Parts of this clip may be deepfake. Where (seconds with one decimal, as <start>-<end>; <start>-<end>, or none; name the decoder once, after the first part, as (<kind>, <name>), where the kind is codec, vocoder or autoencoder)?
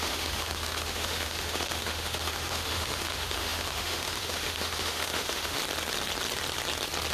0.0-5.6 (autoencoder, DAC-VAE)